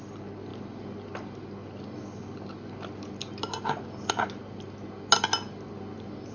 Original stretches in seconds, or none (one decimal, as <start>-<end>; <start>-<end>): 0.0-6.3